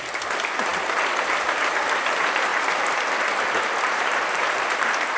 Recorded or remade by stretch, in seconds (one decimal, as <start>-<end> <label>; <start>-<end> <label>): 0.0-2.5 remade; 2.5-3.8 recorded; 3.8-5.2 remade